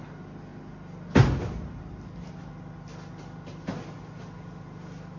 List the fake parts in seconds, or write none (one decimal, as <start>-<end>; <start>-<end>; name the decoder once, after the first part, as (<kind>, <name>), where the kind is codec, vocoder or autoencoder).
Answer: none